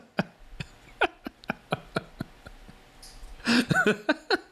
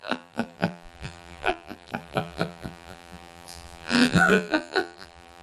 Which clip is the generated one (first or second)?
second